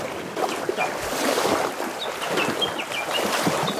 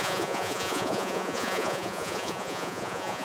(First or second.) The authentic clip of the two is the first